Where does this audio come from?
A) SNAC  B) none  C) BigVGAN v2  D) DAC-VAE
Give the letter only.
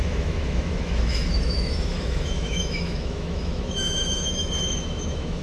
D